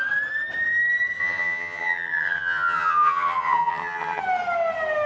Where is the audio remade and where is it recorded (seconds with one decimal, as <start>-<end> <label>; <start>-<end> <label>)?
0.0-1.2 recorded; 1.2-4.2 remade; 4.2-5.1 recorded